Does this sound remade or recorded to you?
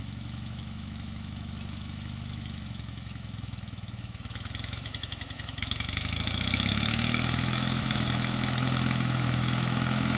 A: remade